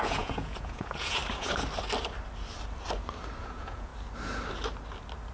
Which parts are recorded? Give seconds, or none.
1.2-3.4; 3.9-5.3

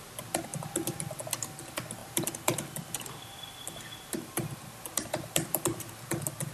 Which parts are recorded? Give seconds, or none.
0.0-2.0; 5.9-6.5

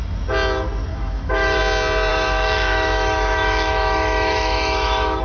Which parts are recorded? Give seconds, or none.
0.0-0.9; 1.6-2.1

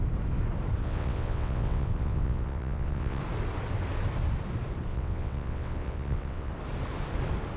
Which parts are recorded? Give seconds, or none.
0.0-0.8; 3.2-4.9; 6.5-7.6

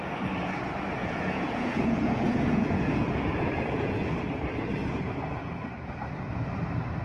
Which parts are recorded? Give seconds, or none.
0.0-1.0; 4.1-7.0

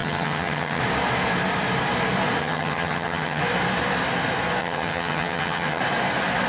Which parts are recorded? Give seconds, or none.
0.8-2.4; 3.4-4.6; 5.8-6.5

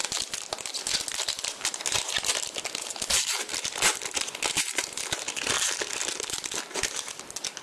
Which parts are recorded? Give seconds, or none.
0.0-7.6